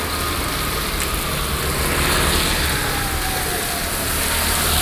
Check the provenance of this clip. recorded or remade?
recorded